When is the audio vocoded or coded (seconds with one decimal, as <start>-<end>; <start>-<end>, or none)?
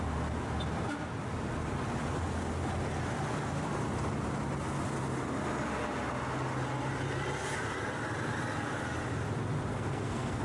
9.7-10.4